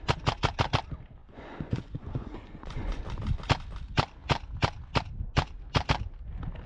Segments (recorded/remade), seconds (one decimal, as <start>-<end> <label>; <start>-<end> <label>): 0.0-1.2 recorded; 1.2-3.0 remade; 3.0-6.7 recorded